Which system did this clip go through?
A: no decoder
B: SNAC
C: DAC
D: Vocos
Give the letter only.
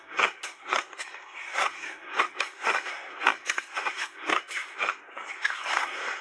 B